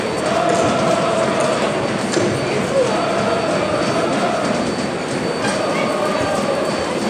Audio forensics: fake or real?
real